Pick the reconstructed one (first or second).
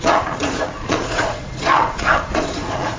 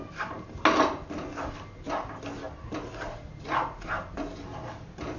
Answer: first